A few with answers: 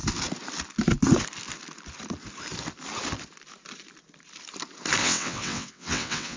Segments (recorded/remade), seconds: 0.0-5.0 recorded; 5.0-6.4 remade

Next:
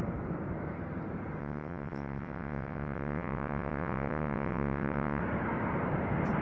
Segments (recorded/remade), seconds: 0.0-1.4 recorded; 1.4-5.2 remade; 5.2-6.4 recorded